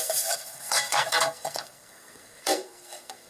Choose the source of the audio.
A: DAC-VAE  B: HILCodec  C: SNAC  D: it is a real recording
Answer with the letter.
C